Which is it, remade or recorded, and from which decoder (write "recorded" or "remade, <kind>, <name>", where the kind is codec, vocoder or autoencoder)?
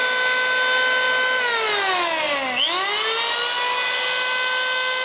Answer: recorded